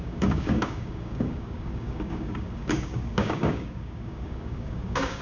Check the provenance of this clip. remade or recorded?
remade